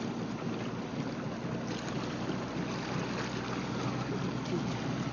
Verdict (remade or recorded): recorded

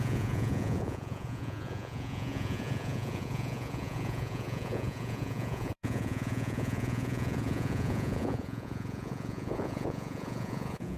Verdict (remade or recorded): remade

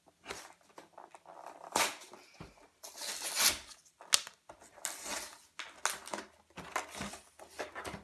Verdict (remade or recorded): recorded